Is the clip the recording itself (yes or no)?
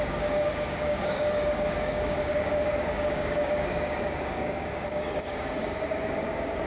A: no